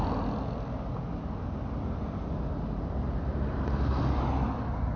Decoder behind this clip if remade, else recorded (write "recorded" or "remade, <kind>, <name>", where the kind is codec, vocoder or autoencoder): recorded